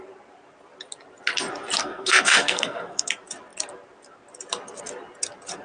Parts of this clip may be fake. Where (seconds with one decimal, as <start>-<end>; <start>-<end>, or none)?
1.8-3.1